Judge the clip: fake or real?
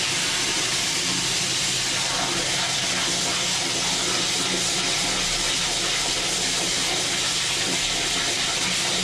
real